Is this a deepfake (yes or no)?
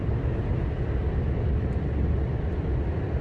no